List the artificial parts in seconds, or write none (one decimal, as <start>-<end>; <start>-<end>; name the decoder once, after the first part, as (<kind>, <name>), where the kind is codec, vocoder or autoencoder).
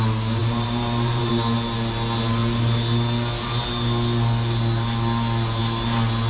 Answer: 0.4-1.3 (vocoder, BigVGAN v2)